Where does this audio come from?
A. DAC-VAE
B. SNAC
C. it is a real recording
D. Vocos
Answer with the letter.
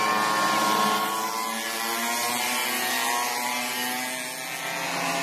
C